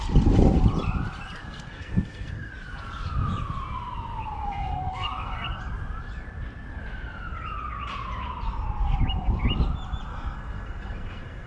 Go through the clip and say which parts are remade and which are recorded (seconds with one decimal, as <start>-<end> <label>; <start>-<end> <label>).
0.0-1.4 recorded; 1.4-2.5 remade; 2.5-4.4 recorded; 4.4-5.6 remade; 5.6-10.1 recorded; 10.1-11.5 remade